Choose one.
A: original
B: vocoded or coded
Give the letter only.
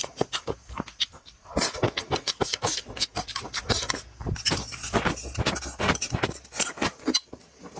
A